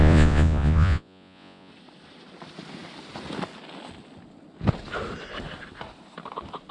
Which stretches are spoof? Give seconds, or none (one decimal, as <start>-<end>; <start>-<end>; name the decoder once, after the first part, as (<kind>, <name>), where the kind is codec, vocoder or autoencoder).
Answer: 0.0-1.7 (vocoder, Vocos)